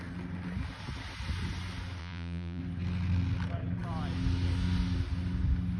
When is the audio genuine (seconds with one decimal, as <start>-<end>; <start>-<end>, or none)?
0.0-2.0; 2.6-5.8